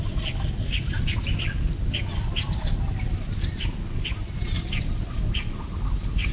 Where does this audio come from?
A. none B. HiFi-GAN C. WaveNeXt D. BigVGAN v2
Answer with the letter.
A